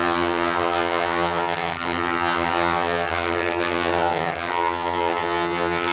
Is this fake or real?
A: fake